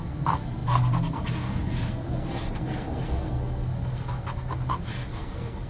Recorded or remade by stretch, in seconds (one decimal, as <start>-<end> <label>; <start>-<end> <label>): 0.0-5.7 remade